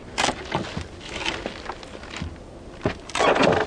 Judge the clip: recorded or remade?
recorded